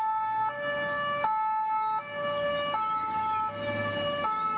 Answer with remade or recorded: recorded